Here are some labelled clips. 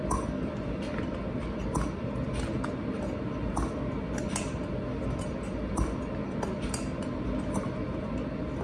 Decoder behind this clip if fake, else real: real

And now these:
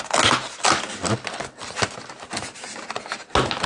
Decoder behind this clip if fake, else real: real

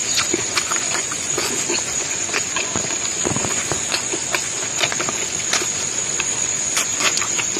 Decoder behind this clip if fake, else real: fake, vocoder, Vocos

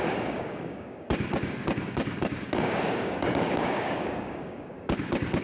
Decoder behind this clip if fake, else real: fake, codec, DAC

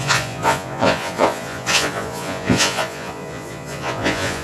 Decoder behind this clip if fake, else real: fake, vocoder, Vocos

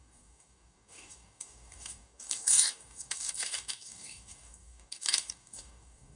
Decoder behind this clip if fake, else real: fake, codec, DAC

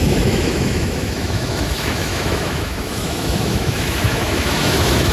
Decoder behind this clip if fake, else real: fake, autoencoder, DAC-VAE